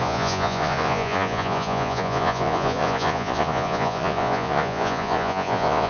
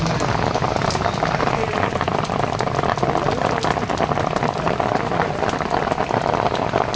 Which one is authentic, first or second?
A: second